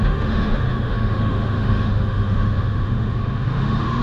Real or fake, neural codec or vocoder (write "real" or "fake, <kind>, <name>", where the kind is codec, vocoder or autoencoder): fake, autoencoder, DAC-VAE